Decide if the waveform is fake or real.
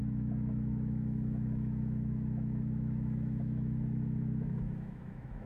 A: fake